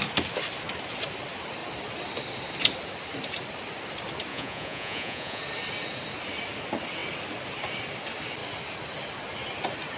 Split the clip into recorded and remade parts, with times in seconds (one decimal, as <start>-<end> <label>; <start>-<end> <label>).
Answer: 0.0-4.3 recorded; 4.3-5.4 remade; 5.4-10.0 recorded